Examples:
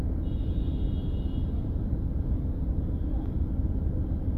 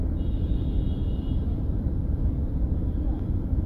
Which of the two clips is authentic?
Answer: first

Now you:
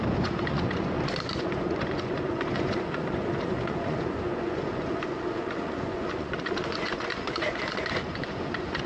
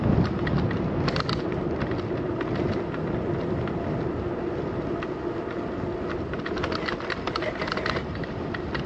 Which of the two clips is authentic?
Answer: second